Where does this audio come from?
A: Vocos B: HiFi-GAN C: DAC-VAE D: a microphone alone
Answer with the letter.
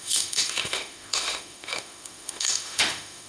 C